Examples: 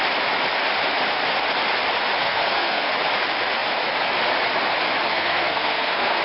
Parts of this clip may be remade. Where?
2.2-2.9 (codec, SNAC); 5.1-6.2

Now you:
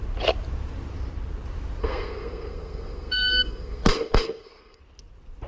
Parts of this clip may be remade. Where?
1.8-4.8 (codec, SNAC)

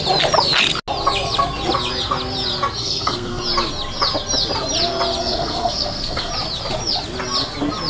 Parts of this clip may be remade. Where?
2.8-3.4 (codec, SNAC); 5.2-6.3

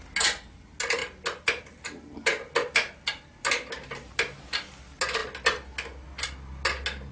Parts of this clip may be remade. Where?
none

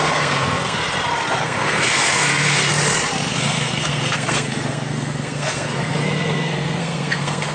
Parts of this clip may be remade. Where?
0.0-0.8 (codec, SNAC); 1.4-2.6; 3.3-7.5

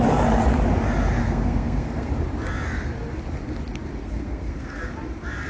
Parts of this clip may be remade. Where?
1.2-2.1 (codec, SNAC); 4.0-4.8

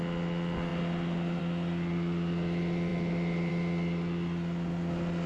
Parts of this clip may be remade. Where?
none